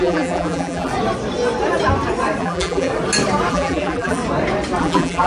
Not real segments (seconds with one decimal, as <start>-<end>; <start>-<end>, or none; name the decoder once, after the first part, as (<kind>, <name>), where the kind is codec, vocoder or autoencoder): 0.0-0.9 (vocoder, BigVGAN v2); 2.4-2.9; 3.5-4.2; 4.8-5.3